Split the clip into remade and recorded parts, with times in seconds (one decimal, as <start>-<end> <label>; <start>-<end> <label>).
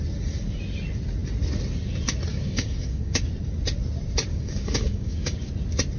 0.0-2.3 recorded; 2.3-3.2 remade; 3.2-4.3 recorded; 4.3-5.5 remade; 5.5-6.0 recorded